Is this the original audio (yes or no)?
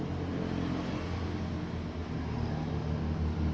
yes